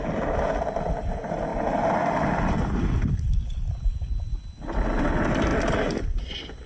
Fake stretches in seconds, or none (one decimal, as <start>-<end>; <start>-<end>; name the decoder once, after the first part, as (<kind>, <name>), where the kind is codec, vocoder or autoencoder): none